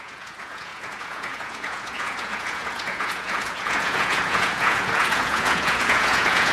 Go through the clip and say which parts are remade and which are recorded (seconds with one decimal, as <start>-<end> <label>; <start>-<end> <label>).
0.0-6.5 remade